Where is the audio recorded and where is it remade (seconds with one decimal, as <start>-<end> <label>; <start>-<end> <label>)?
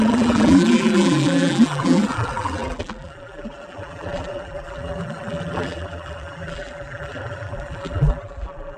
0.0-8.8 remade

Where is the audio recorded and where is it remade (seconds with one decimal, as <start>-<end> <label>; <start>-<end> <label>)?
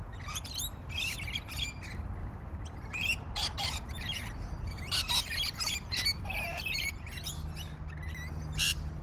0.0-2.2 recorded; 2.2-7.3 remade; 7.3-9.0 recorded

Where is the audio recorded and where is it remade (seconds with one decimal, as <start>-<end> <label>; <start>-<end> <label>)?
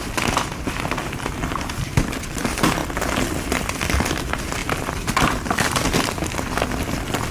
0.0-2.8 remade; 2.8-3.4 recorded; 3.4-7.3 remade